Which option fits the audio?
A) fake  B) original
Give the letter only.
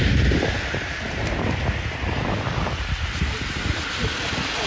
B